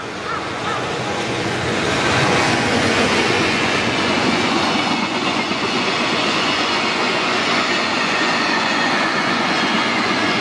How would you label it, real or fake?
fake